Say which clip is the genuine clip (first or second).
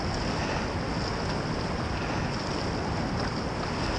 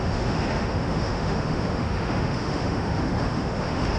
first